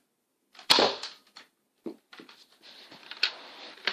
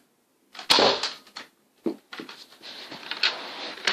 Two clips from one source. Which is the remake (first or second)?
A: first